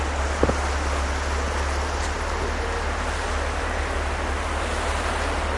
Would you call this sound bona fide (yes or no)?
yes